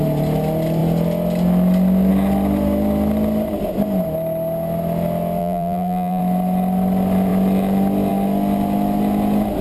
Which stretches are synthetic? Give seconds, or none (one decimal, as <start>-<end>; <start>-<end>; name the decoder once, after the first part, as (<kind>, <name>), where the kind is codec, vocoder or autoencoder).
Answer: 5.4-6.2 (vocoder, BigVGAN v2)